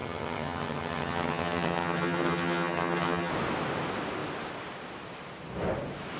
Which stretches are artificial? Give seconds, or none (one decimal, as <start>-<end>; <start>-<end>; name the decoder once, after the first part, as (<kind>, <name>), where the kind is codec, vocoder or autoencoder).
0.0-3.3 (vocoder, HiFi-GAN)